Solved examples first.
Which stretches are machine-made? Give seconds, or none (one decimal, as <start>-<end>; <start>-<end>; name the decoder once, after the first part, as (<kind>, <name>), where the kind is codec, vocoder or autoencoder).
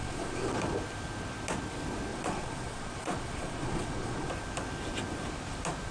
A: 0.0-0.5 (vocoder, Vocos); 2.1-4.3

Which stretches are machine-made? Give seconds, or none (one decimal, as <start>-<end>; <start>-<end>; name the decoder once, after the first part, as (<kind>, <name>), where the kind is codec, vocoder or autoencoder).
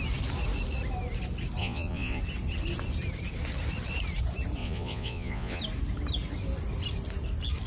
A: 1.6-2.2 (vocoder, Vocos); 4.6-5.6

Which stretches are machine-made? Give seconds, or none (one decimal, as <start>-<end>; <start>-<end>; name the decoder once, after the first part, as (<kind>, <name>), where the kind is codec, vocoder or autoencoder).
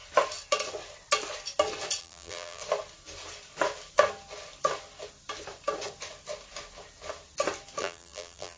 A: 2.0-2.6 (vocoder, BigVGAN v2); 7.8-8.6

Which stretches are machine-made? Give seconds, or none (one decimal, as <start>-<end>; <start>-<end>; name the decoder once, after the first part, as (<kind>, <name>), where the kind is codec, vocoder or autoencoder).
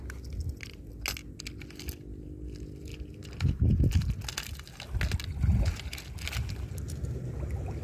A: none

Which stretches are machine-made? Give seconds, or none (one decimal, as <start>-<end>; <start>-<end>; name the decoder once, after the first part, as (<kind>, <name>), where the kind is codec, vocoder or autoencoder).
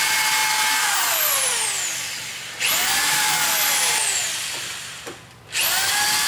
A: 0.0-0.4 (vocoder, BigVGAN v2); 1.0-6.3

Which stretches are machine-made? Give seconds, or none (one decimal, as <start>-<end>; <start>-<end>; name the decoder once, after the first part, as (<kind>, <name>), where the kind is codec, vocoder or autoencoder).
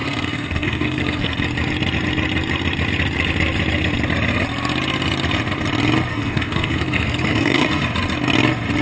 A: 0.0-1.4 (codec, SNAC); 6.1-7.8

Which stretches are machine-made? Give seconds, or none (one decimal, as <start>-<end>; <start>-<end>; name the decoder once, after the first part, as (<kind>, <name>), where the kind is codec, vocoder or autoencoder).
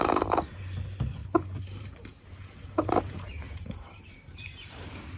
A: 1.2-4.0 (vocoder, BigVGAN v2)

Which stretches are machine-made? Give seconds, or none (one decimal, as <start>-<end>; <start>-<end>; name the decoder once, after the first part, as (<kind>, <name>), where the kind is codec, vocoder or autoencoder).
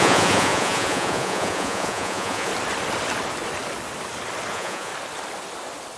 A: 0.0-2.5 (vocoder, Vocos); 4.5-4.9